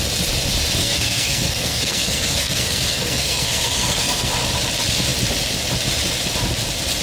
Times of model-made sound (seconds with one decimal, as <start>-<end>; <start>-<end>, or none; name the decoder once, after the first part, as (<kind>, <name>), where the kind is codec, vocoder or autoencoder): 0.8-4.3 (codec, SNAC)